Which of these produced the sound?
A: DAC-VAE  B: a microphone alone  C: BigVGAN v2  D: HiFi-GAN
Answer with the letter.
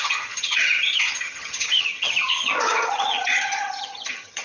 D